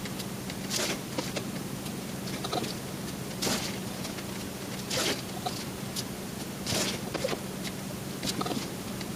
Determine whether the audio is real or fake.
real